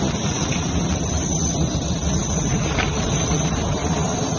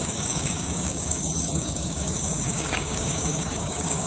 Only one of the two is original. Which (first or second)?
first